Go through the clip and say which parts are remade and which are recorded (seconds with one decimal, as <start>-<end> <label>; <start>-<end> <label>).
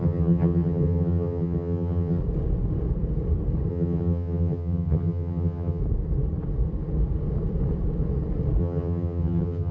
0.0-2.2 remade; 2.2-3.7 recorded; 3.7-5.8 remade; 5.8-8.6 recorded; 8.6-9.7 remade